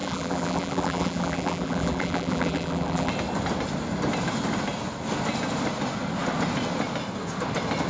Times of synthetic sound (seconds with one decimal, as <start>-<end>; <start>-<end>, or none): 0.0-3.1